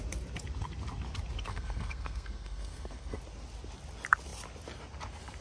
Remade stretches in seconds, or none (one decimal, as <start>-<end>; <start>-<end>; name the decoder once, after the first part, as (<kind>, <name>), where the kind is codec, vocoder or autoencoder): 1.5-3.2 (codec, SNAC)